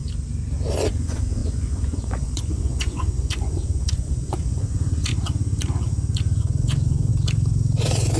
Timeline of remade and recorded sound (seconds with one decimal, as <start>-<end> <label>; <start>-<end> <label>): 0.0-0.9 recorded; 0.9-5.1 remade; 5.1-6.4 recorded; 6.4-7.1 remade; 7.1-8.2 recorded